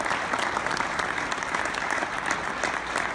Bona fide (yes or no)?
yes